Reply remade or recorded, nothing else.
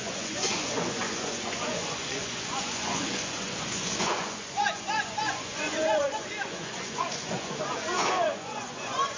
remade